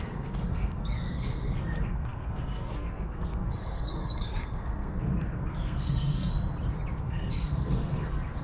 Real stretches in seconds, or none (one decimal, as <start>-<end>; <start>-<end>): 6.3-7.0